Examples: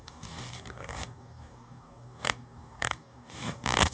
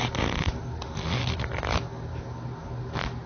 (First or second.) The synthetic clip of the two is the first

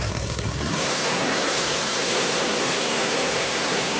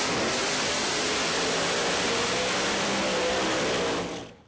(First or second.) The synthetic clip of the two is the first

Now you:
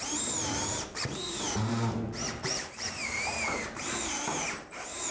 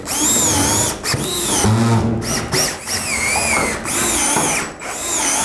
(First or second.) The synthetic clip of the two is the first